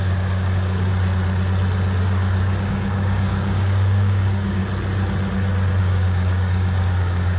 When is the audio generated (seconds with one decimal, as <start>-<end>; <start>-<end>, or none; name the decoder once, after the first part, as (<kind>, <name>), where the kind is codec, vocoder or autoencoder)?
0.0-0.9 (codec, DAC); 2.0-4.6; 5.8-7.4